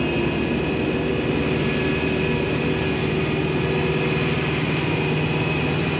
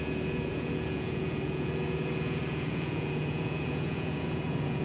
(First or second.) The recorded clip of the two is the first